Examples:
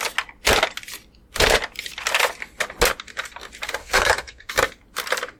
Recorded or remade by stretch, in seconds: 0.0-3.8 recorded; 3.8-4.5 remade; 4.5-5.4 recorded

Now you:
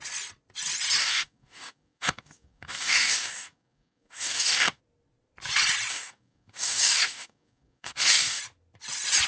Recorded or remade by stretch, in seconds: 0.0-1.0 recorded; 1.0-4.8 remade; 4.8-5.9 recorded; 5.9-8.4 remade; 8.4-9.3 recorded

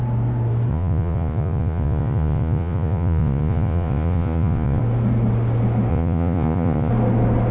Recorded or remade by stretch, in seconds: 0.0-0.7 recorded; 0.7-4.8 remade; 4.8-5.9 recorded; 5.9-6.9 remade; 6.9-7.5 recorded

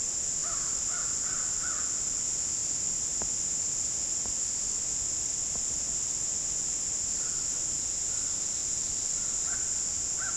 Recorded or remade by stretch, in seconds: 0.0-10.4 recorded